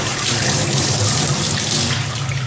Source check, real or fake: real